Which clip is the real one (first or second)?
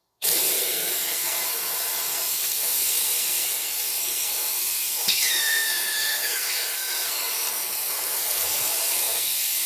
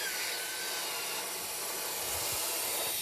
second